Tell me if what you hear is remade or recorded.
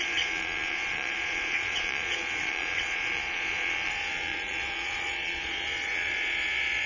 remade